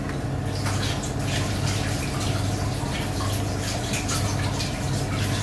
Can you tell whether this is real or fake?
real